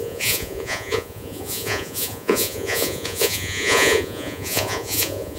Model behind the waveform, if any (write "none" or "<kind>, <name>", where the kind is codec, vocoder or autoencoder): vocoder, Vocos